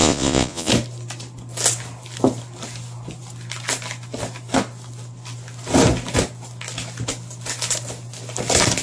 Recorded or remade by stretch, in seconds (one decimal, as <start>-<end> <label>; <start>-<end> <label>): 0.0-0.7 remade; 0.7-8.8 recorded